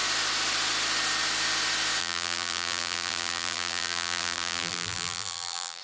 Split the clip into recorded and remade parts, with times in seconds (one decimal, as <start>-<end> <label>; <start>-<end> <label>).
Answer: 0.0-2.0 recorded; 2.0-5.8 remade